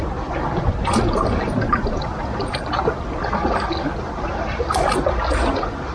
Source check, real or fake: real